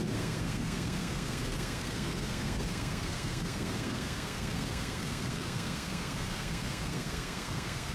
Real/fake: fake